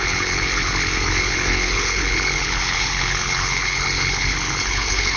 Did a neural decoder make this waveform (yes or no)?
yes